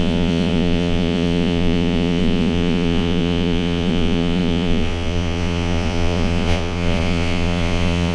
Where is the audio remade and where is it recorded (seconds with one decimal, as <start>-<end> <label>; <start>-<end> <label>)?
0.0-8.1 remade